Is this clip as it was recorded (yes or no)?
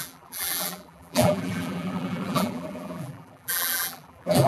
no